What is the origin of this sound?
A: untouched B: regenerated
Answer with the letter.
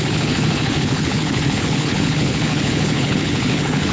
B